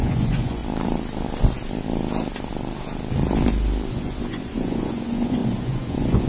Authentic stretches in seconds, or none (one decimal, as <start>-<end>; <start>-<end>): 0.6-3.9